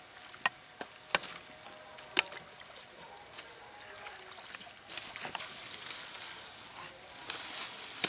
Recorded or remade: recorded